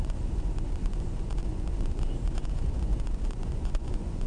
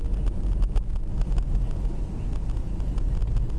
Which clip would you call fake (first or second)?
first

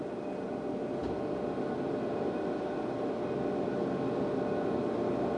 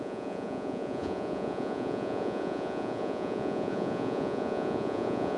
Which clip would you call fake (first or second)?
second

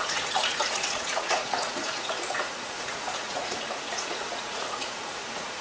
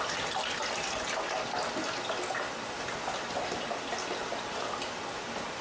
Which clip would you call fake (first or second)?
first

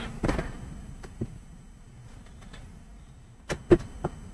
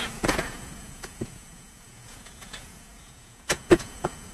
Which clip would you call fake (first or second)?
second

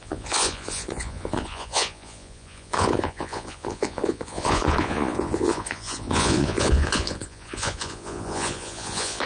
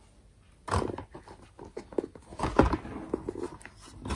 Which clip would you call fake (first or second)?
first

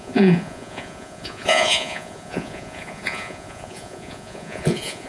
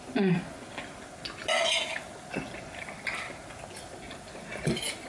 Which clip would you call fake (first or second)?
first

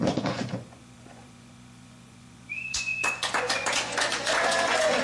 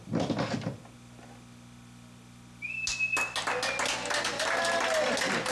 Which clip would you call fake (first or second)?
first